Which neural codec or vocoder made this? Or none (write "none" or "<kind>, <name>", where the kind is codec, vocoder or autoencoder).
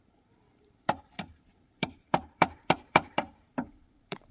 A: vocoder, BigVGAN v2